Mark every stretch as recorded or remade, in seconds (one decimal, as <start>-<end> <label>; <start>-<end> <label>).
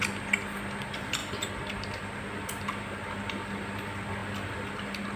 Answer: 0.0-5.2 recorded